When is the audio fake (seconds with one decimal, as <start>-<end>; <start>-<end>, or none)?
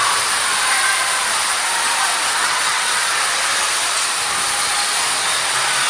2.4-3.1